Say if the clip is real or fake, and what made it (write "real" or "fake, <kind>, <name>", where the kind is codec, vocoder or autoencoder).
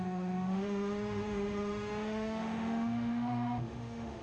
fake, autoencoder, DAC-VAE